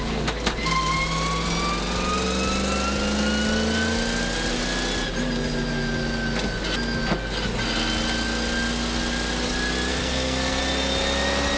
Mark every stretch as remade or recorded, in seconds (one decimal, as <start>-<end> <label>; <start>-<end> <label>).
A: 0.0-9.9 recorded; 9.9-10.6 remade; 10.6-11.6 recorded